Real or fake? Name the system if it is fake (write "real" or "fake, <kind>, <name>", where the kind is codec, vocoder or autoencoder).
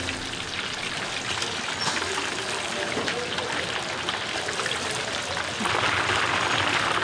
real